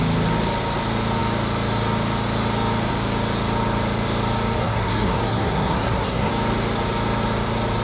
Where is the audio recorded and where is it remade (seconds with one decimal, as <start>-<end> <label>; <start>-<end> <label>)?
0.0-4.6 recorded; 4.6-6.3 remade; 6.3-7.8 recorded